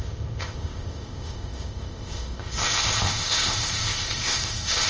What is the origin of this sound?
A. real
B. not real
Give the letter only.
B